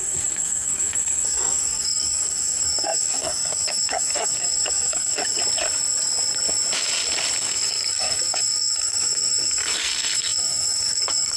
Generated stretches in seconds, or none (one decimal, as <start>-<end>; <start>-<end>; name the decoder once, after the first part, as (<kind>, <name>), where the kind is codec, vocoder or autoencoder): 0.0-5.4 (codec, SNAC); 7.4-11.4